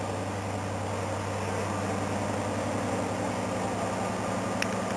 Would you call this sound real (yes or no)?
yes